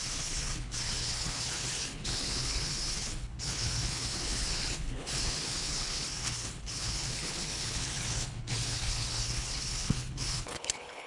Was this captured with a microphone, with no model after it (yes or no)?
no